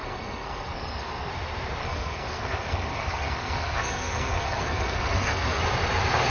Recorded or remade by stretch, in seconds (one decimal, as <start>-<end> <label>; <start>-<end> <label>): 0.0-1.3 remade; 1.3-1.8 recorded; 1.8-5.6 remade; 5.6-6.3 recorded